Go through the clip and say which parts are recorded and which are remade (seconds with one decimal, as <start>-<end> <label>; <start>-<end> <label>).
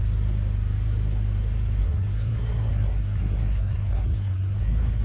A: 0.0-1.8 recorded; 1.8-5.0 remade